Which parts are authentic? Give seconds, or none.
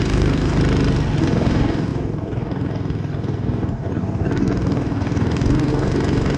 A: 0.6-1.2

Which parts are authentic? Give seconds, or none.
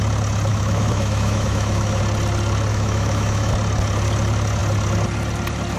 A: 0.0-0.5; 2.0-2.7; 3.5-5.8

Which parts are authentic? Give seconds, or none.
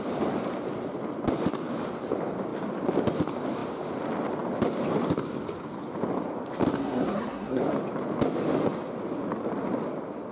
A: 0.0-6.8; 7.6-10.3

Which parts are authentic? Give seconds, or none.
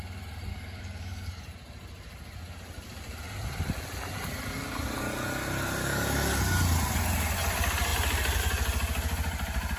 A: 0.0-0.5; 1.4-5.8; 6.4-9.8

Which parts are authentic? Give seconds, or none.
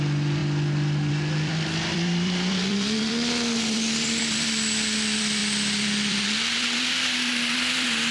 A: 0.4-1.1